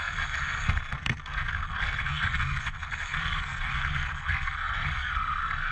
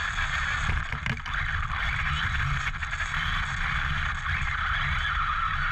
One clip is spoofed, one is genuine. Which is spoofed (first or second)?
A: first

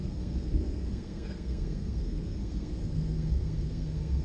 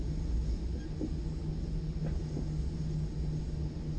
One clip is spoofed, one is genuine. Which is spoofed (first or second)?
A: first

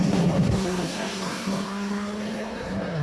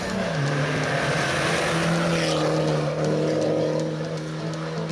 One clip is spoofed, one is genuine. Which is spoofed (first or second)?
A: first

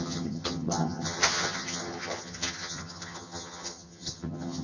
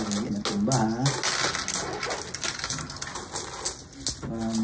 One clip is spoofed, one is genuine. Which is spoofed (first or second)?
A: first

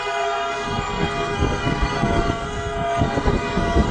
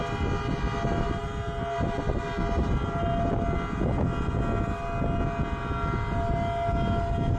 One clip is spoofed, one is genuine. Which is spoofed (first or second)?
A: first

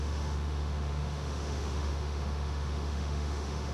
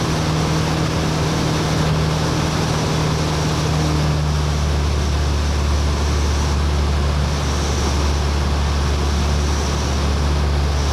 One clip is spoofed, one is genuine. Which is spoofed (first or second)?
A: first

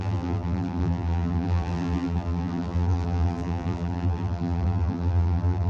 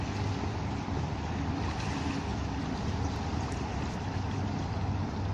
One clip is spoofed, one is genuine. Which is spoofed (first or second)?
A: first